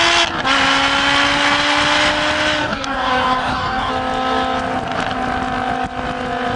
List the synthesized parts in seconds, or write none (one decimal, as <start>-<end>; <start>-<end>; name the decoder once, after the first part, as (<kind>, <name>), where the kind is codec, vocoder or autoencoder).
2.6-3.9 (codec, DAC)